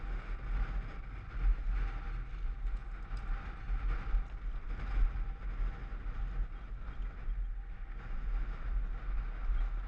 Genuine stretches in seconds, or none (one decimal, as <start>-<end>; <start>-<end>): 0.0-9.9

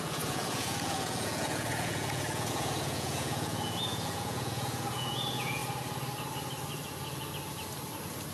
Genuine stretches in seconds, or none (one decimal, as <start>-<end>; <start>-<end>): 5.6-8.3

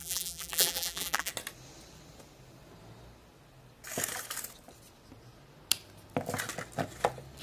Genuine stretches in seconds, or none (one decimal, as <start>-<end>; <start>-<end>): 1.3-7.4

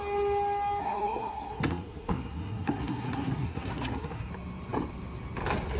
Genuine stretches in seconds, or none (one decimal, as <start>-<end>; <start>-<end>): 0.0-0.8; 4.3-5.8